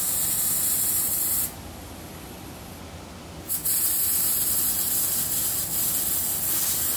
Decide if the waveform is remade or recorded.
recorded